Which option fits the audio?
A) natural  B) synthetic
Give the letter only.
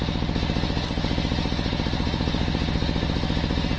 A